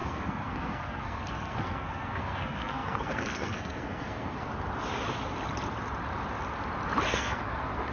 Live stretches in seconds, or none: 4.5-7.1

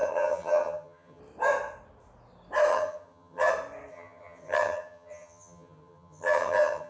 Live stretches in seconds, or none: 1.2-2.7; 3.5-3.9

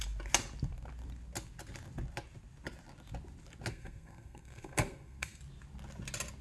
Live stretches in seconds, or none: 0.0-3.7; 5.4-6.4